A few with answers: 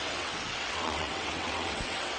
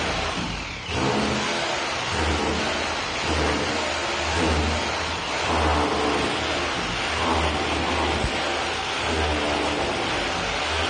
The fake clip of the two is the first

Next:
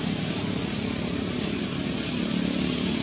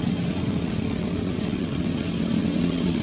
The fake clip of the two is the second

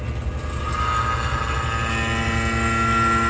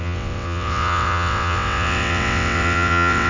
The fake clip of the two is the second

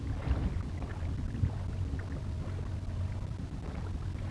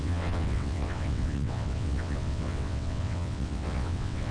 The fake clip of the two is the second